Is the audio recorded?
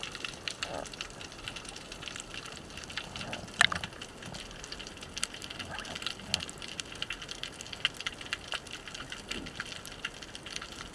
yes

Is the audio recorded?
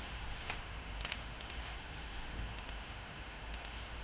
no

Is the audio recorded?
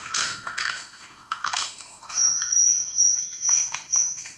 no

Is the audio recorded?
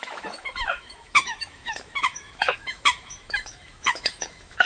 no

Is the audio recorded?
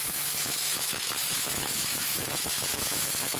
no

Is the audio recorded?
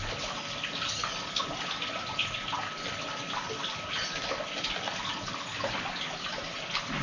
yes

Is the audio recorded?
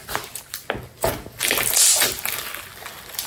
yes